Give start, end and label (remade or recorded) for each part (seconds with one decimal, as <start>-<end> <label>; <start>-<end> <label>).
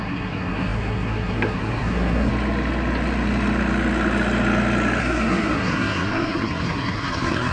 0.0-2.3 remade; 2.3-5.0 recorded; 5.0-7.5 remade